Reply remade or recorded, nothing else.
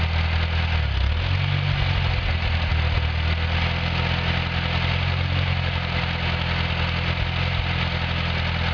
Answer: recorded